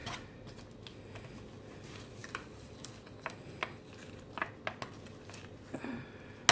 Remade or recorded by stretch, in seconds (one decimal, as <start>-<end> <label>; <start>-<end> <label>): 0.0-2.2 recorded; 2.2-3.9 remade; 3.9-6.5 recorded